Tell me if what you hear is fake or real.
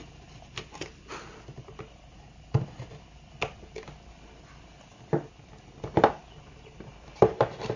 real